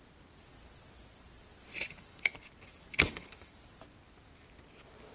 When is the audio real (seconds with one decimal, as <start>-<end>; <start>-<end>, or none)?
0.0-1.8; 3.6-5.1